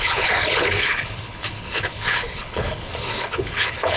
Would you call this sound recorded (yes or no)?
no